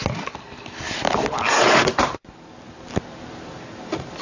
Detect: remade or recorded recorded